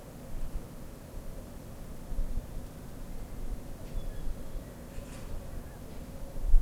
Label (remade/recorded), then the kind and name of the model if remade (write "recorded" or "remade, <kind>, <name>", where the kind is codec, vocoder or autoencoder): remade, vocoder, BigVGAN v2